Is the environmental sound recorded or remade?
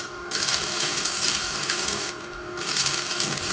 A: remade